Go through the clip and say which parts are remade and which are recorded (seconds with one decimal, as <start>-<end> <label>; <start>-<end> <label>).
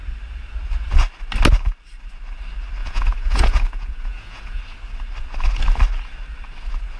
0.0-2.8 recorded; 2.8-4.6 remade; 4.6-7.0 recorded